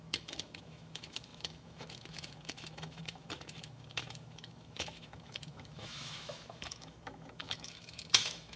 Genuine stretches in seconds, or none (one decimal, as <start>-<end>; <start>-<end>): none